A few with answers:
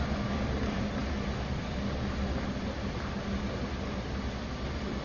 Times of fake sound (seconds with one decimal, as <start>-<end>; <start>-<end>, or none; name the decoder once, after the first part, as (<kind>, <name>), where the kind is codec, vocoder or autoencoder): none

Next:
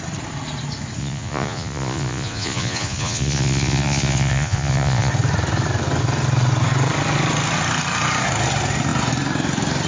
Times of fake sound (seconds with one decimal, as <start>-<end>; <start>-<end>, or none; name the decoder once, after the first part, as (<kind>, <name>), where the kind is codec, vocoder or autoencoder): 1.0-5.1 (vocoder, Vocos)

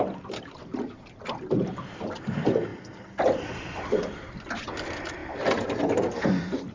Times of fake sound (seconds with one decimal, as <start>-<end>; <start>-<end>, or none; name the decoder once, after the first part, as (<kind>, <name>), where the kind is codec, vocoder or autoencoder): none

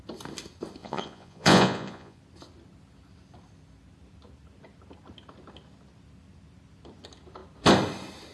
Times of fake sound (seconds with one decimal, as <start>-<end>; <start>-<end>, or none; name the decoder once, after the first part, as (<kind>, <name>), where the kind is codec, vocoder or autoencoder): 0.8-2.2 (vocoder, Vocos)

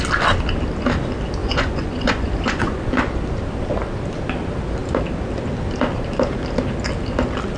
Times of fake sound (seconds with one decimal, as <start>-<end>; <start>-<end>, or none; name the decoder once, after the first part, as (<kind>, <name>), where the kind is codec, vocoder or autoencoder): 1.4-2.9 (vocoder, Vocos)

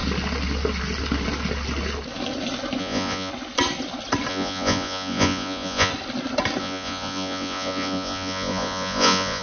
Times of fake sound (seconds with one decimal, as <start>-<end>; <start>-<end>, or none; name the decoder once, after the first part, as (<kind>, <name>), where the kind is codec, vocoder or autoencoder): 2.8-3.3 (vocoder, Vocos); 4.3-5.9; 6.6-9.4

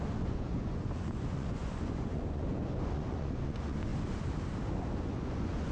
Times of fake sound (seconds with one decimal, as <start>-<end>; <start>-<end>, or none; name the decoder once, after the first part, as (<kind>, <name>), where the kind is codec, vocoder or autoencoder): 0.0-3.9 (vocoder, Vocos); 4.8-5.7